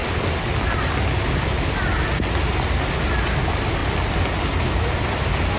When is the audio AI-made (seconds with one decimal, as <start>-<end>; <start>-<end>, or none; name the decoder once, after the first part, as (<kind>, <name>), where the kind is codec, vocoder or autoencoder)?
none